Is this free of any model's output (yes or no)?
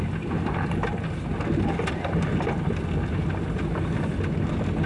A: yes